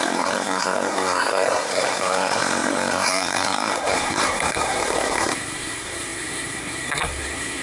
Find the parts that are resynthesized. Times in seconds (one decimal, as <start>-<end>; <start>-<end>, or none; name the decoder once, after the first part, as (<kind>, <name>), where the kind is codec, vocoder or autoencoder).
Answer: 0.0-7.6 (codec, SNAC)